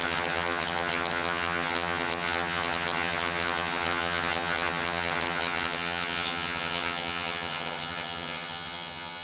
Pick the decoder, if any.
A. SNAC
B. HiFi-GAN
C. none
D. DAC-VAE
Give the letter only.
B